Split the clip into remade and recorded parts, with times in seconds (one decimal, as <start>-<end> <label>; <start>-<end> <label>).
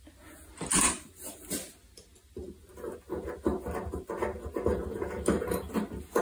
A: 0.0-0.7 recorded; 0.7-1.7 remade; 1.7-6.2 recorded